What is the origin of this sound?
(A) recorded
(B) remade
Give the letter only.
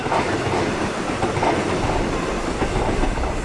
A